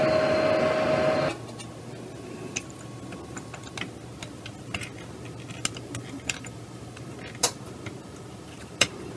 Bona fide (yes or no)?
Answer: yes